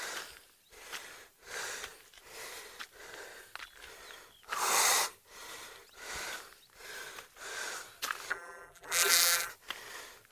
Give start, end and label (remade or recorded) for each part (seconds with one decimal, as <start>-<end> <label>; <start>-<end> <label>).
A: 0.0-8.3 recorded; 8.3-9.5 remade; 9.5-10.3 recorded